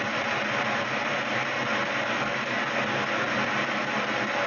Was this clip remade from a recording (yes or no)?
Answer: no